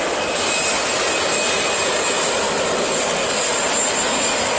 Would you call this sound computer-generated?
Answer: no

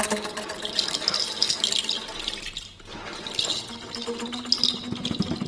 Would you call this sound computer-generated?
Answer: no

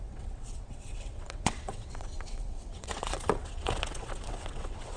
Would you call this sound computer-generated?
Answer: yes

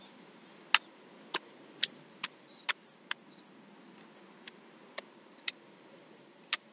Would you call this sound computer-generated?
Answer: no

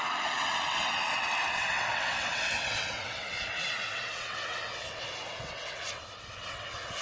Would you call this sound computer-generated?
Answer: yes